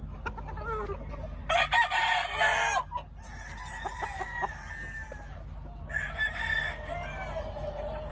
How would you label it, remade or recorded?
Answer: recorded